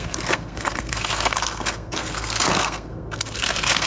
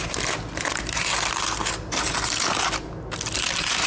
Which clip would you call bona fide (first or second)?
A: second